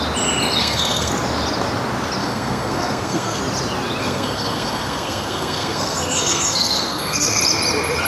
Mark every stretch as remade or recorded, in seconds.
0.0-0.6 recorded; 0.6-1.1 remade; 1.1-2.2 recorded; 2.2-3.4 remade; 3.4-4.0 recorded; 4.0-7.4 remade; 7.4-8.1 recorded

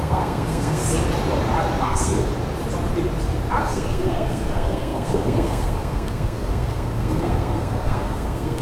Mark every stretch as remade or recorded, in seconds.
0.0-0.8 remade; 0.8-1.8 recorded; 1.8-2.3 remade; 2.3-3.6 recorded; 3.6-8.6 remade